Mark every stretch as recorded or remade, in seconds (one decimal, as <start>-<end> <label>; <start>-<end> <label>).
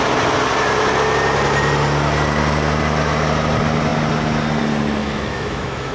0.0-5.0 recorded; 5.0-5.9 remade